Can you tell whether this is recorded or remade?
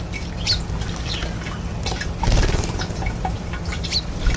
recorded